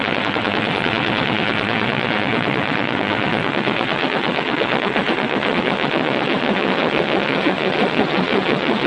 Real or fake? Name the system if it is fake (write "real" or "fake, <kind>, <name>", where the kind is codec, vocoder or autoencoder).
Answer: fake, vocoder, WaveNeXt